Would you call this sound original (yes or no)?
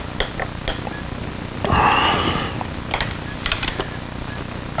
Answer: yes